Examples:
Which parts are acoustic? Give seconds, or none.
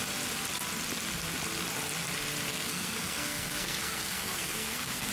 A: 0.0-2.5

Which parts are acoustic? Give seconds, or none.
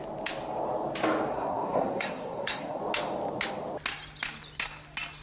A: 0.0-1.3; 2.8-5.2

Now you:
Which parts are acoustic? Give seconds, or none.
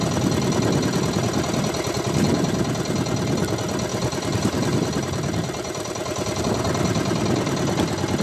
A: 0.0-3.9; 6.4-8.2